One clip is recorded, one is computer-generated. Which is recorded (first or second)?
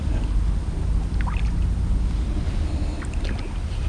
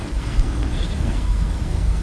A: first